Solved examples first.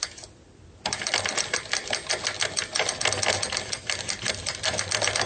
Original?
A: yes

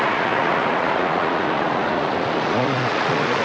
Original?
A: no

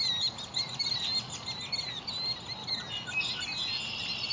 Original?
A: yes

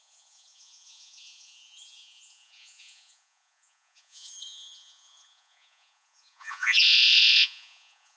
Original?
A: no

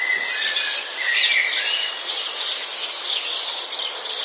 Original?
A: yes